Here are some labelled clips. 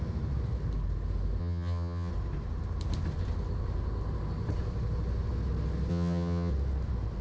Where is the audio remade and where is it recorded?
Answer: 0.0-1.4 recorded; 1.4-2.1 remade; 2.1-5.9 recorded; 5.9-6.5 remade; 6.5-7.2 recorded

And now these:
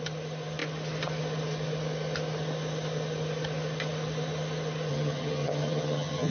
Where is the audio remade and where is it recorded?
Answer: 0.0-4.9 recorded; 4.9-6.3 remade